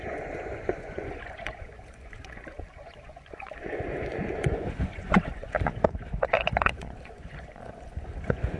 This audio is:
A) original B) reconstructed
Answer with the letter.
B